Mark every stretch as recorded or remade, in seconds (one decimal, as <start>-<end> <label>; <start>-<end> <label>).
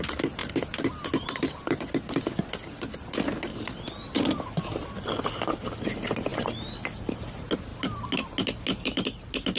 0.0-9.6 recorded